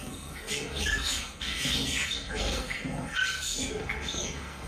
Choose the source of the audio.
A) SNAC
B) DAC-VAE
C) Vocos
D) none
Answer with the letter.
A